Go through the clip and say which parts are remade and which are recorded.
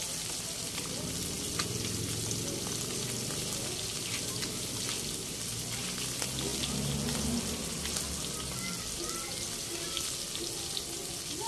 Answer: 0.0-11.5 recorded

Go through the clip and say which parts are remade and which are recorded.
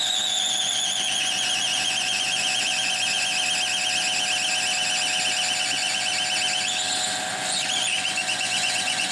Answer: 0.0-3.3 remade; 3.3-5.6 recorded; 5.6-6.1 remade; 6.1-7.3 recorded; 7.3-9.1 remade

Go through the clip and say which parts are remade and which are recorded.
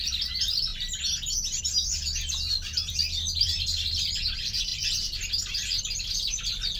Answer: 0.0-0.7 remade; 0.7-1.6 recorded; 1.6-6.8 remade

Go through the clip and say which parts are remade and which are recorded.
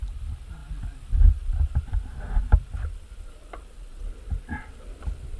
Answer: 0.0-5.4 recorded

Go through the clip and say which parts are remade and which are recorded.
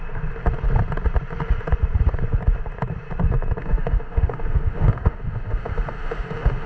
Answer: 0.0-3.6 recorded; 3.6-6.7 remade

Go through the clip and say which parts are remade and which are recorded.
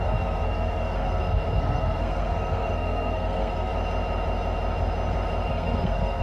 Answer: 0.0-3.7 remade; 3.7-5.5 recorded; 5.5-6.2 remade